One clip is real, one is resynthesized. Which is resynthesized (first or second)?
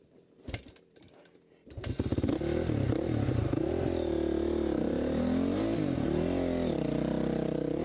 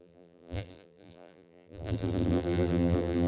second